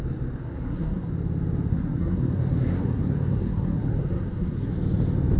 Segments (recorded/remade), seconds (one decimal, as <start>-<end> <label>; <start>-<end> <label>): 0.0-0.4 recorded; 0.4-1.1 remade; 1.1-1.7 recorded; 1.7-4.7 remade; 4.7-5.4 recorded